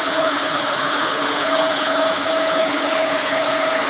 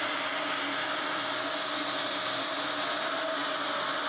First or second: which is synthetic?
first